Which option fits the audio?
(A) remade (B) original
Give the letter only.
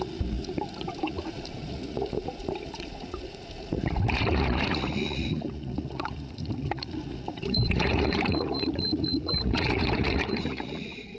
A